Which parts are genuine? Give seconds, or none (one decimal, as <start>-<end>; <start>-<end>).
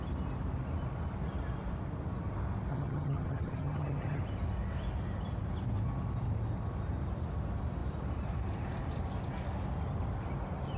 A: 0.0-2.7; 4.2-10.8